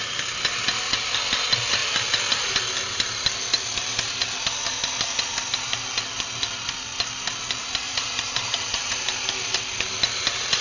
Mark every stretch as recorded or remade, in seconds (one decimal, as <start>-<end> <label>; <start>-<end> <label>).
0.0-1.8 recorded; 1.8-2.6 remade; 2.6-7.6 recorded; 7.6-9.1 remade; 9.1-10.6 recorded